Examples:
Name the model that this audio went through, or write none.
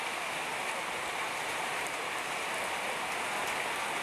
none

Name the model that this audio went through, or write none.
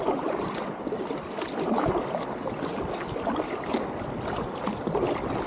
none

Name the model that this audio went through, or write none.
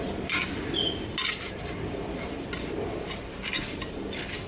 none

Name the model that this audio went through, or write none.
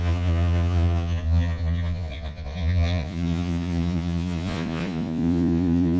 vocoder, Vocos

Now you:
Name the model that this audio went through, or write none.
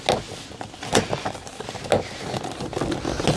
none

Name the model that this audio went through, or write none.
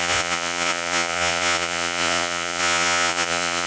vocoder, Vocos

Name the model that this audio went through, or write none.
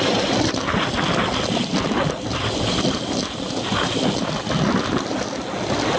none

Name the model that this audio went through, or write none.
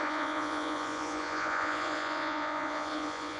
vocoder, Vocos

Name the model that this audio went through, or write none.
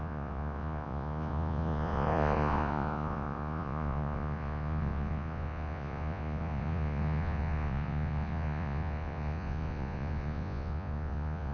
vocoder, Vocos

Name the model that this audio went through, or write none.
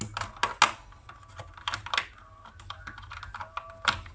none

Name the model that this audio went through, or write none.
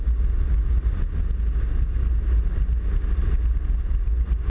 none